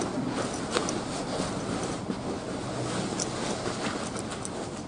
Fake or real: real